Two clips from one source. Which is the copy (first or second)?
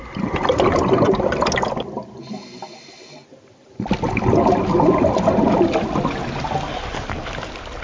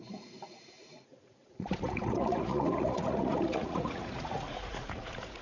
second